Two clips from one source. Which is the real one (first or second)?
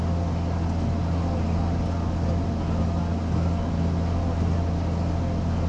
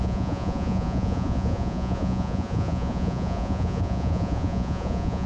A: first